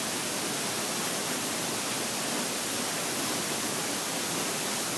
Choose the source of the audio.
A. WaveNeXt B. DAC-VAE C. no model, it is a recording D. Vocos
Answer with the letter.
C